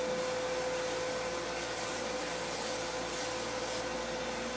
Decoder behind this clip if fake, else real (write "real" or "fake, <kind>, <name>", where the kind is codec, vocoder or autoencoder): real